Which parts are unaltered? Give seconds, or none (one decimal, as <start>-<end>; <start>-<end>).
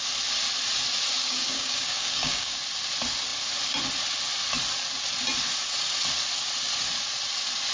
0.0-1.2; 2.6-7.7